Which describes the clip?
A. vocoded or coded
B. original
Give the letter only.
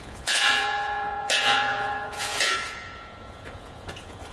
A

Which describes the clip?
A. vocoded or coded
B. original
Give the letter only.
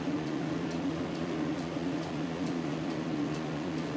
A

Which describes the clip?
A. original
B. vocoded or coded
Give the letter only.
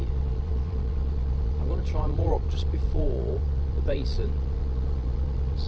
B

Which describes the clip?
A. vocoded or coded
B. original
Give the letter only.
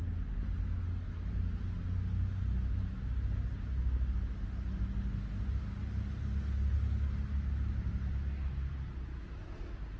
B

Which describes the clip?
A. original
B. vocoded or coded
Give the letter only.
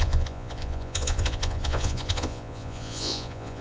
B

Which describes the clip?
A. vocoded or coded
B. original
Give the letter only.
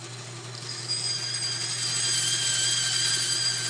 B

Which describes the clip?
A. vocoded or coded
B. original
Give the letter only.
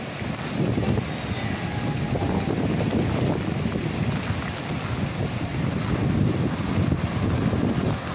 B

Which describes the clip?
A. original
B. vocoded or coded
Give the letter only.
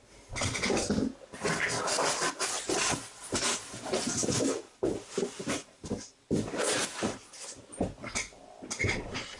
A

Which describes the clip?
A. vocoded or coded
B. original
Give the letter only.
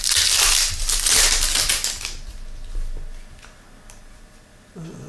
B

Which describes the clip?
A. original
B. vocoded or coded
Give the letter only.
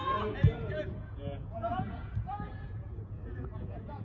B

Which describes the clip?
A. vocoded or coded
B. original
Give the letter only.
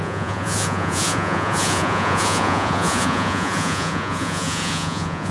A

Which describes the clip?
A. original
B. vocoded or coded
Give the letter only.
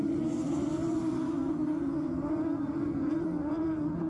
A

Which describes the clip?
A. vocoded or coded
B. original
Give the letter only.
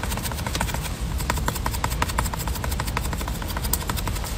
B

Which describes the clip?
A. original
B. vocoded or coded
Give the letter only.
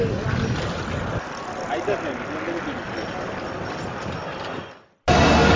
A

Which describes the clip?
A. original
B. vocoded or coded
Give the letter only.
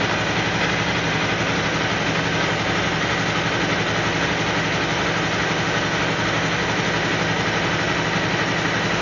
A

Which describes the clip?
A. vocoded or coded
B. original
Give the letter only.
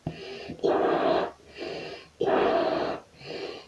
B